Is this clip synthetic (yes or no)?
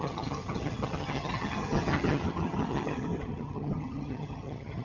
yes